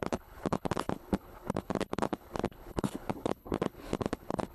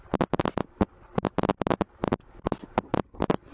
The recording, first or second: second